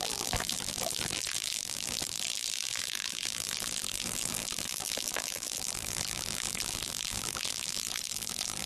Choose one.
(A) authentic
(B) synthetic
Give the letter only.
B